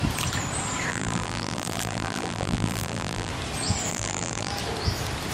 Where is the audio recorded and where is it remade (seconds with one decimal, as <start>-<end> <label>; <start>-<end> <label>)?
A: 0.0-0.9 recorded; 0.9-3.3 remade; 3.3-3.9 recorded; 3.9-4.5 remade; 4.5-5.3 recorded